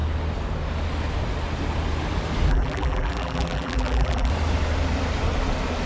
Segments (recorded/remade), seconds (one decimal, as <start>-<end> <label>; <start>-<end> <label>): 0.0-2.5 recorded; 2.5-4.3 remade; 4.3-5.9 recorded